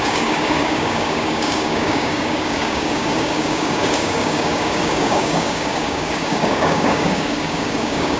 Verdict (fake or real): fake